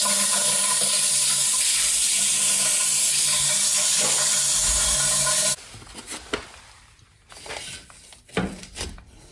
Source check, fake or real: real